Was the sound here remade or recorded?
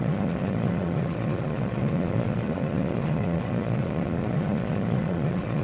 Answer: remade